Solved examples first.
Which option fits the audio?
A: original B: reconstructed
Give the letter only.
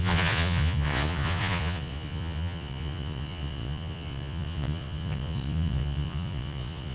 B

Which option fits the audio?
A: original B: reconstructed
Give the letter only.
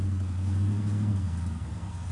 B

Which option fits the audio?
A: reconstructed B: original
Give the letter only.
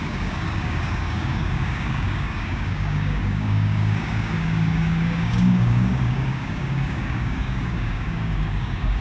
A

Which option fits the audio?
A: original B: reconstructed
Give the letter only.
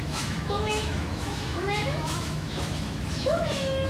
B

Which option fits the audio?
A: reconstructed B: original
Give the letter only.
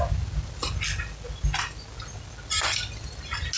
B